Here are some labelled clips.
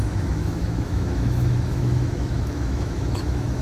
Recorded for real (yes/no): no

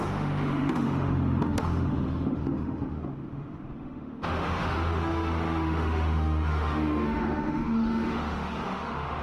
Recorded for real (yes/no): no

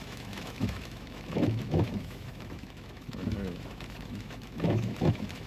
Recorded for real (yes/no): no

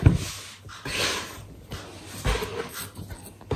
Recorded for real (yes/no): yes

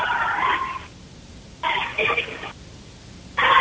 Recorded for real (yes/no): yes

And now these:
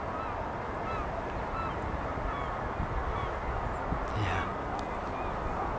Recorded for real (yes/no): yes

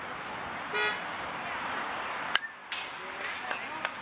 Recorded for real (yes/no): yes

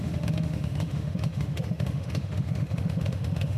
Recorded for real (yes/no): no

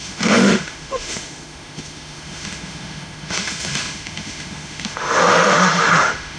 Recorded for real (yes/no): no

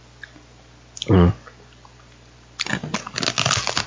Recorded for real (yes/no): yes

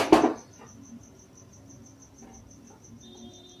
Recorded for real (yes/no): yes